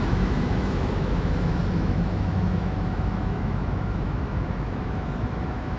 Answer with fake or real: fake